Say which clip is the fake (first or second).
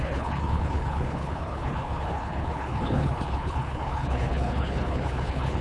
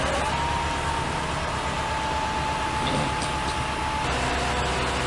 first